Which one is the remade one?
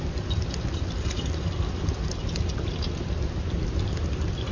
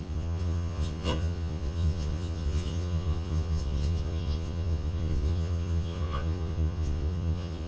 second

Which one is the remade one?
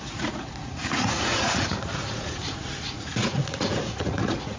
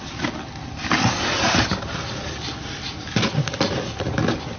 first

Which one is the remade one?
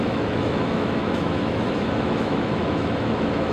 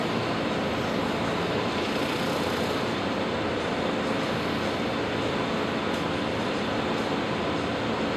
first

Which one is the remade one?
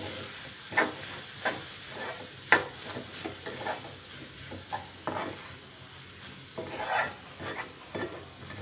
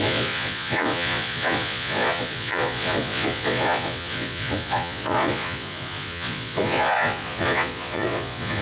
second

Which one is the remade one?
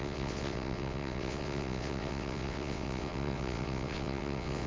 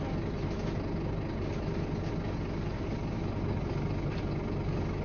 first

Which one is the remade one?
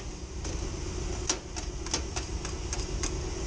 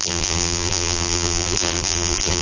second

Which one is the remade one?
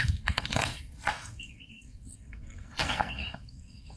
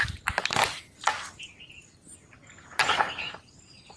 first